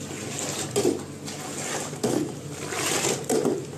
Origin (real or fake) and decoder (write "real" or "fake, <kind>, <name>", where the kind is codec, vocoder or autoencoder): real